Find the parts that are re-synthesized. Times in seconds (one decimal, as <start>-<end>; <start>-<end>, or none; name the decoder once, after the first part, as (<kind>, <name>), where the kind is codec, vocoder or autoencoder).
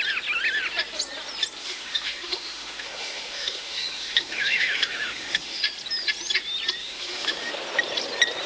1.6-5.6 (autoencoder, DAC-VAE); 6.8-7.5